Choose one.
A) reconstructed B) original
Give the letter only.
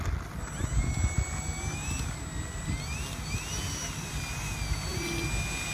B